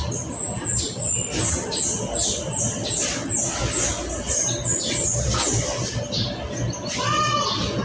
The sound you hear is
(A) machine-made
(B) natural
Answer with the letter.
B